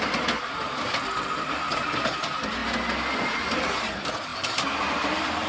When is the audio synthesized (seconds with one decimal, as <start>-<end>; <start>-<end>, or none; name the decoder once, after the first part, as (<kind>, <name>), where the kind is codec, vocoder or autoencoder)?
0.0-2.6 (vocoder, BigVGAN v2); 3.2-5.5